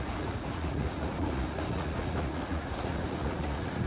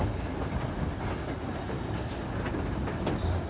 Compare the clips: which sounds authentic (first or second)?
second